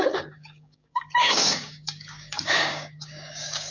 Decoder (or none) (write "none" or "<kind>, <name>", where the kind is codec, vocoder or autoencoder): codec, DAC